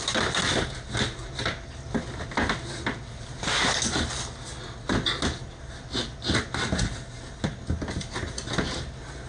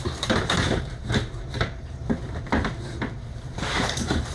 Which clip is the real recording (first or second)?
first